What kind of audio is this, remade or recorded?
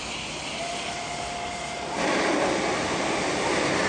recorded